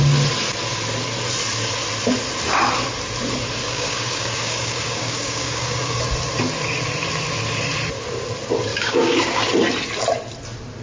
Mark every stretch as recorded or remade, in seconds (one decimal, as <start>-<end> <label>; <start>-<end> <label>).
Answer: 0.0-3.6 recorded; 3.6-6.0 remade; 6.0-8.7 recorded; 8.7-9.5 remade; 9.5-10.8 recorded